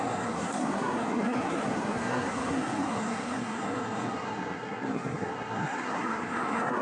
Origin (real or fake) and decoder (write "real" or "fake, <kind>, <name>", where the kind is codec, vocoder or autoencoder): fake, codec, SNAC